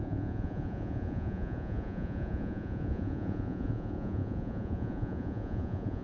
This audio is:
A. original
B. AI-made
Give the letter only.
B